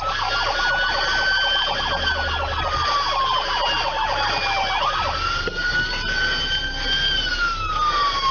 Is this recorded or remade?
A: recorded